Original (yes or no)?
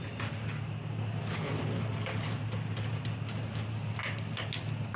yes